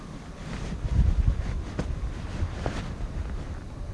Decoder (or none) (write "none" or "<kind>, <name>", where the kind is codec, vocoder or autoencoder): none